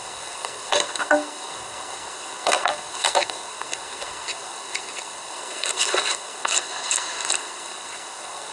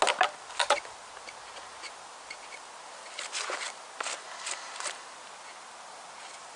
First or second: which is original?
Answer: second